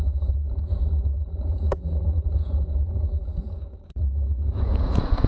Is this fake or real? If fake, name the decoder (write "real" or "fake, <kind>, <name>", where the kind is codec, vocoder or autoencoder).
fake, vocoder, Vocos